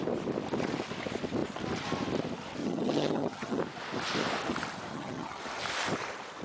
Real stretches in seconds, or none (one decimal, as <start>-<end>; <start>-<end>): 0.0-2.6; 3.6-4.9; 5.4-6.4